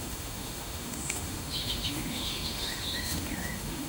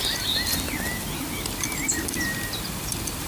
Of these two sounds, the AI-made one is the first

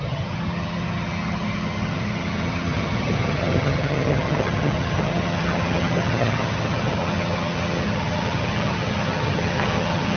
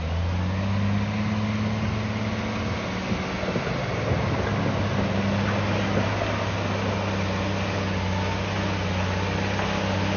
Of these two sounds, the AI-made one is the first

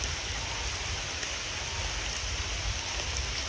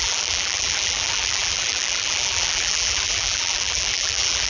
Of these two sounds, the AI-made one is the second